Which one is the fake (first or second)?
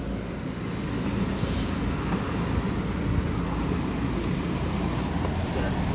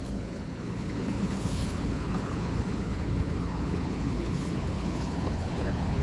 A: second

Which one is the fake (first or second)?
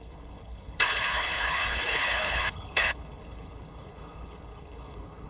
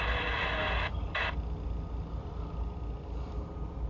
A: first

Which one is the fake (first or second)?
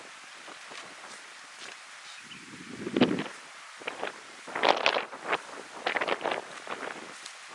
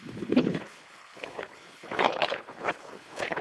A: second